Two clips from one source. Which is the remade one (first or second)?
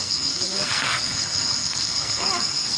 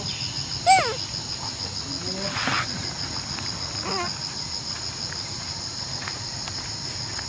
first